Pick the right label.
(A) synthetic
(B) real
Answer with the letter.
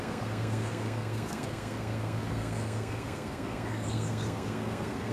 A